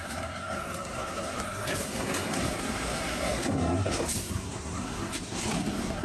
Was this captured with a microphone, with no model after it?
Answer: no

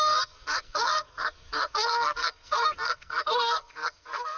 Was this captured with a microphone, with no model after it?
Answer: no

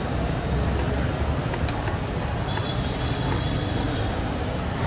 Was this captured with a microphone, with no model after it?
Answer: yes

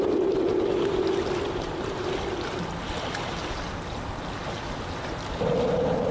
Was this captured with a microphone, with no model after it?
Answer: yes